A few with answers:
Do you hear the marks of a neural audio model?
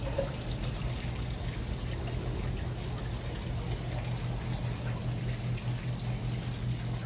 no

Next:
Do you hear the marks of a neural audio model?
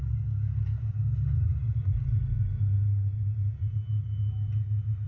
no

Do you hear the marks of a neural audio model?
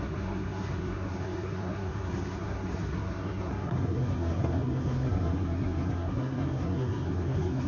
yes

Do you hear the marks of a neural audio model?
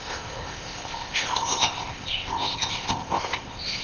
yes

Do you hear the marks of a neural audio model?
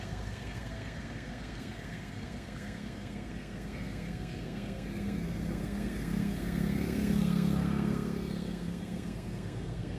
yes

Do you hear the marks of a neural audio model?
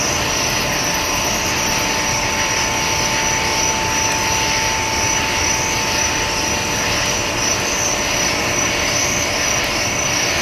no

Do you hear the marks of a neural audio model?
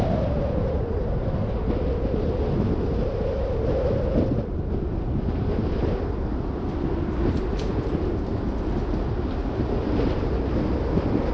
no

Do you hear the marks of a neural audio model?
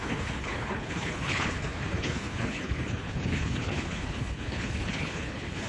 yes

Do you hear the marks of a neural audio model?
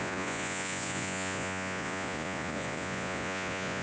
yes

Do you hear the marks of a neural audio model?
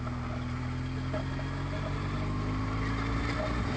no